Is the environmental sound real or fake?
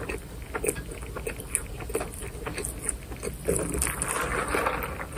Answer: real